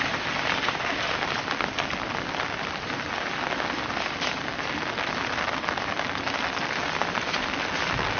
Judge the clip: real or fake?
real